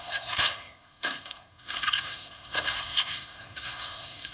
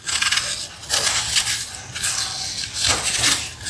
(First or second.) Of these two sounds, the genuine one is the second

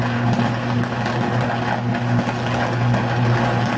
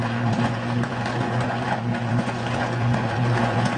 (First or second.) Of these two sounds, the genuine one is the first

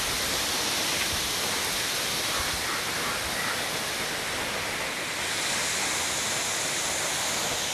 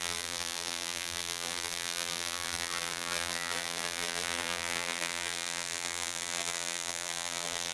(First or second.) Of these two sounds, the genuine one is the first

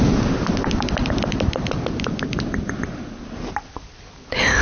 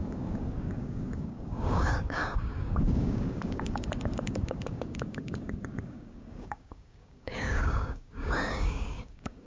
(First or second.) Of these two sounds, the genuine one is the first